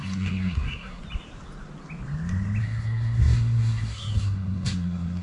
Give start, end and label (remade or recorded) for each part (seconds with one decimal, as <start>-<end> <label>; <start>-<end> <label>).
0.0-1.0 remade; 1.0-2.6 recorded; 2.6-5.2 remade